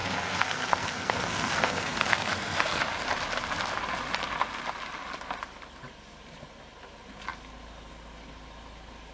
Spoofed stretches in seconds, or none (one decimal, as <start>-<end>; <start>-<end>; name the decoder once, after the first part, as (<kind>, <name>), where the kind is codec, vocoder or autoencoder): 0.0-2.8 (codec, SNAC)